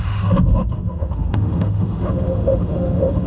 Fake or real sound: fake